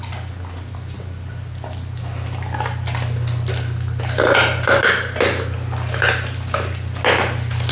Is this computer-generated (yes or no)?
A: no